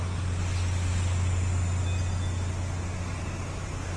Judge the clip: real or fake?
real